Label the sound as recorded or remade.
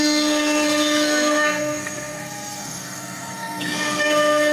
remade